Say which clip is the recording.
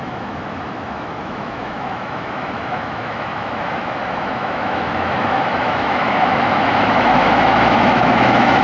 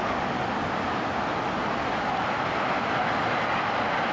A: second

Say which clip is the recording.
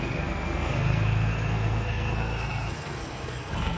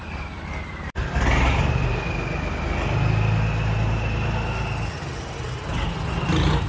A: second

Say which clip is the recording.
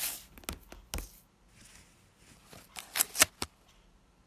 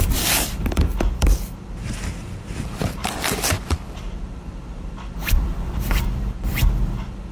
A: first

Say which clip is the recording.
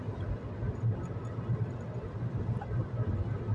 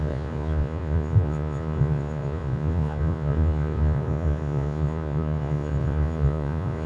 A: first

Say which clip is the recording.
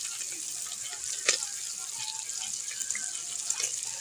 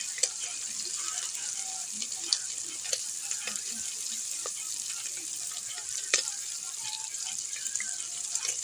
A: first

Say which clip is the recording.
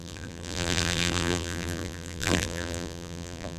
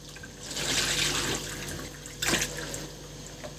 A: second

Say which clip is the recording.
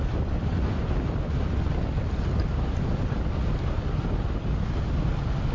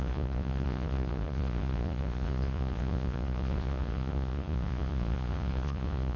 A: first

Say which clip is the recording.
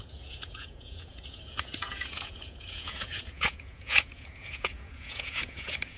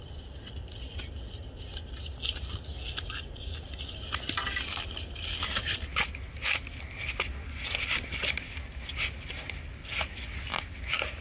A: second